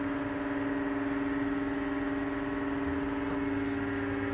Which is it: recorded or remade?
recorded